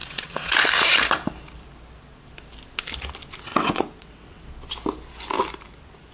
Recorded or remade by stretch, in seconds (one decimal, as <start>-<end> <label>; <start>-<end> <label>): 0.0-0.5 remade; 0.5-3.5 recorded; 3.5-4.4 remade; 4.4-6.1 recorded